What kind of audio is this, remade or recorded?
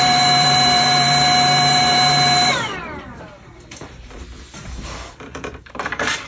remade